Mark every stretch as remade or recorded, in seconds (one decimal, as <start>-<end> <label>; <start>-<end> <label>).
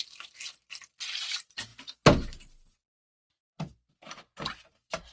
0.0-3.1 recorded; 3.1-3.9 remade; 3.9-5.1 recorded